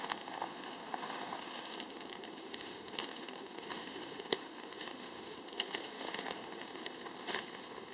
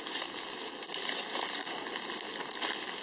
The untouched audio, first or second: second